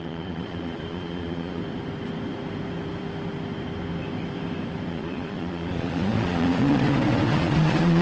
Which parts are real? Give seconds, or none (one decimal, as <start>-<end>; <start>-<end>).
1.6-4.9